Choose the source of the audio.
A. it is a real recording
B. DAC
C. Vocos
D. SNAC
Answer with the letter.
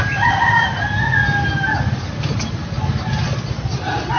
A